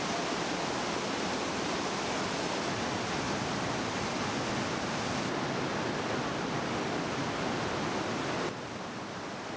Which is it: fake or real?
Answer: real